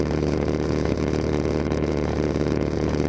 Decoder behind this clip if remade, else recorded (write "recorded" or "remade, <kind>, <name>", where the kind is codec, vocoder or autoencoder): remade, vocoder, Vocos